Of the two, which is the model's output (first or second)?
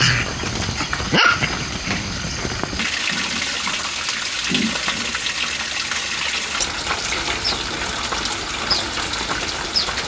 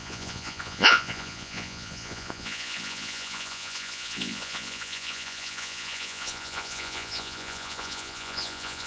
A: second